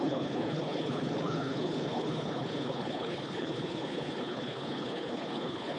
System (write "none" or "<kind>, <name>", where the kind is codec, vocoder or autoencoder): codec, HILCodec